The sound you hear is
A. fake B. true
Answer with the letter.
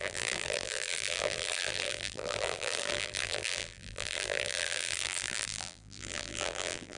A